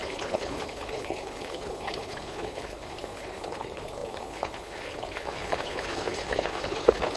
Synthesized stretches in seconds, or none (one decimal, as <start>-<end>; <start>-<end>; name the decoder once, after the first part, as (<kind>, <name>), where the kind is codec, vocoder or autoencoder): 0.0-7.2 (codec, HILCodec)

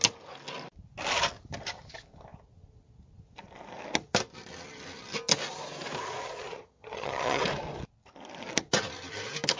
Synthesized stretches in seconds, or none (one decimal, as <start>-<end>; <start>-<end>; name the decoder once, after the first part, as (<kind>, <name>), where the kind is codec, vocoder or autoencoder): 6.5-7.4 (vocoder, HiFi-GAN)

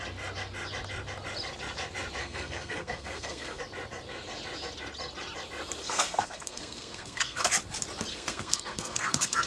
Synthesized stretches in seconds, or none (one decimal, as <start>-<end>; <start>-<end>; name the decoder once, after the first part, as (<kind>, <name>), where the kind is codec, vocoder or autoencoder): 2.2-3.6 (codec, SNAC); 5.8-7.5; 8.1-9.5

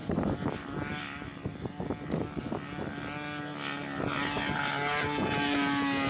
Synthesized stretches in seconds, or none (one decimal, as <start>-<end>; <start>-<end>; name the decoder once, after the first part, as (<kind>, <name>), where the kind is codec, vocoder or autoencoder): none

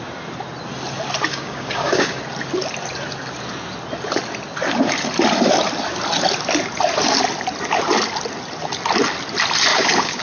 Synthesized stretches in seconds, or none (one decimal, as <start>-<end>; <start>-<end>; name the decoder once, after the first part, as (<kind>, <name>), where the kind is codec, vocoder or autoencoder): 1.3-2.2 (codec, DAC); 9.7-10.2

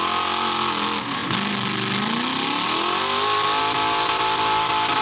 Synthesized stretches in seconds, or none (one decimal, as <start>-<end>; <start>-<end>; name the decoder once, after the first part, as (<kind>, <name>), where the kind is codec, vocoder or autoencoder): none

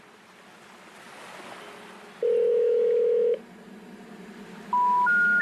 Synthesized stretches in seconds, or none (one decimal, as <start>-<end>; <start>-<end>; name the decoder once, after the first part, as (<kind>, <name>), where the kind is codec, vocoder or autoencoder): 2.5-3.4 (autoencoder, DAC-VAE)

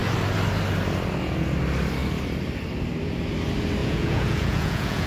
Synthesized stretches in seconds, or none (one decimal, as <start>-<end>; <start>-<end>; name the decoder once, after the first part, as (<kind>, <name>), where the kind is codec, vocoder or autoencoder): 3.8-5.1 (vocoder, Vocos)